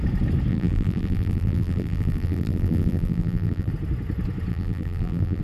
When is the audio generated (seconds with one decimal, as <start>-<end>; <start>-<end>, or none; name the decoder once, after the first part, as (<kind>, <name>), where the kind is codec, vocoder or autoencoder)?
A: 0.5-3.7 (vocoder, BigVGAN v2); 4.5-5.4